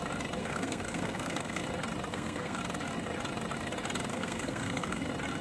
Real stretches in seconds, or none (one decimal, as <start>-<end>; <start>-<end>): 0.0-0.4; 1.6-2.1; 2.6-4.1; 5.0-5.4